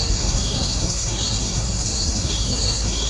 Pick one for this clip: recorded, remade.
remade